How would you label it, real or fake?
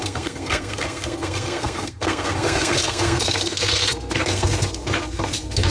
fake